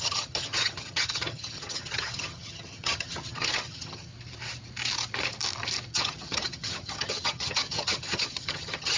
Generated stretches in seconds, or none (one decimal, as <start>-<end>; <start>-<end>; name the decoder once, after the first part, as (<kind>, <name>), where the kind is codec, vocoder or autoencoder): 0.0-4.1 (vocoder, HiFi-GAN); 5.9-9.0